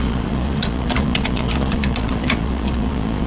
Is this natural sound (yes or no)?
no